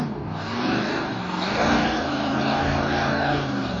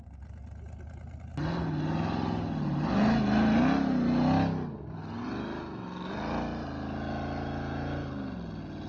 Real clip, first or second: second